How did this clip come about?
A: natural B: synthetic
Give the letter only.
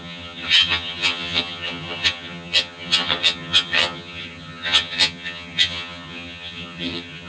B